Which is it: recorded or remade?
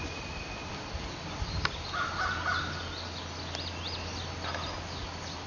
recorded